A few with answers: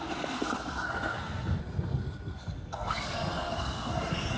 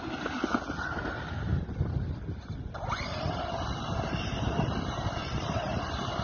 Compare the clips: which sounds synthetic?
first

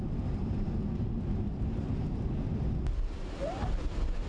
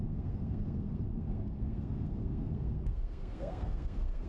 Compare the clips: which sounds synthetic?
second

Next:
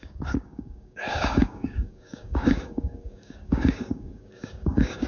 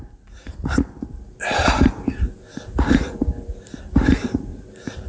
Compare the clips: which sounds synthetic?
first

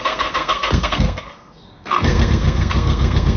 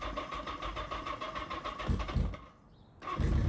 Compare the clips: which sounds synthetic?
first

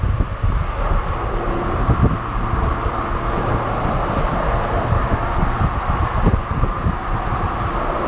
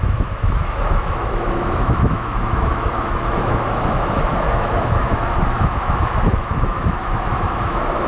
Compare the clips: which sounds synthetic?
second